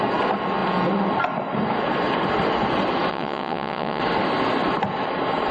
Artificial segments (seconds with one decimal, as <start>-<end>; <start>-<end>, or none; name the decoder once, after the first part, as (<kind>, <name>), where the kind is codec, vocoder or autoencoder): 3.1-4.0 (vocoder, WaveNeXt)